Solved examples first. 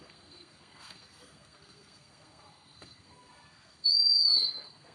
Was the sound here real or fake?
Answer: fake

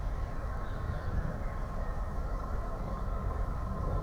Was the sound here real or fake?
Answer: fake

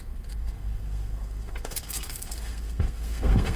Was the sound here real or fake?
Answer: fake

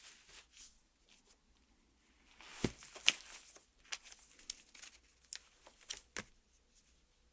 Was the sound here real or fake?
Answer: real